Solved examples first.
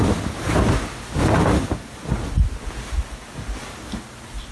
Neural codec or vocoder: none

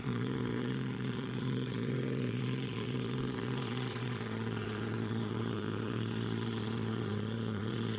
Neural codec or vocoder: vocoder, Vocos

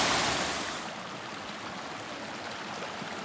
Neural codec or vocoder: none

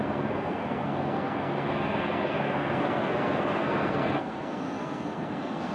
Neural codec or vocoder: codec, SNAC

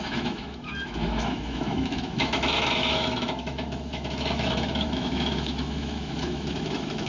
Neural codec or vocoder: autoencoder, DAC-VAE